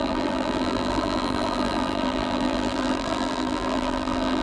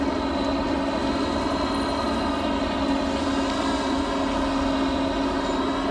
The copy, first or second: first